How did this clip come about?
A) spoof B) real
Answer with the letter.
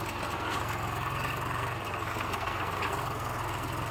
A